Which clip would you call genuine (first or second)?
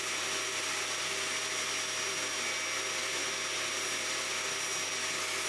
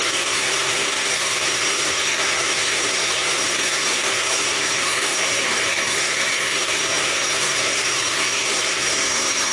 first